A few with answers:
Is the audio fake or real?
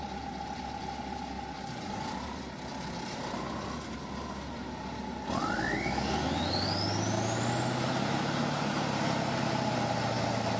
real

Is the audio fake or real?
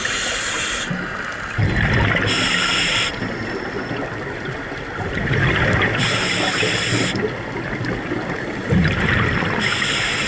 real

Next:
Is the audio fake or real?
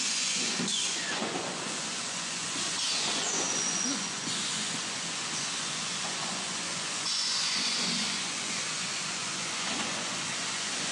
fake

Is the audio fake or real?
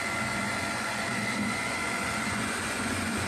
fake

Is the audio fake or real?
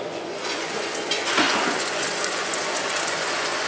fake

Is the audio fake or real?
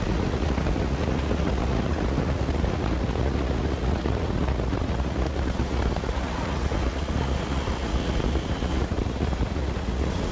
fake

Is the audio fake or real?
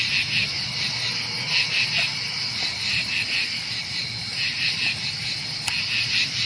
real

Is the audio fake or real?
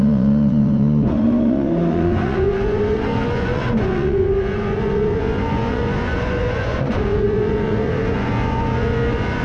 fake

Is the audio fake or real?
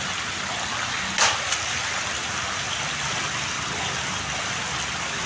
real